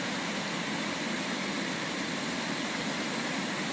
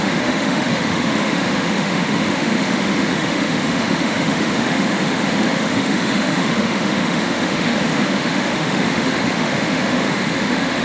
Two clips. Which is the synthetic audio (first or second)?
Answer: second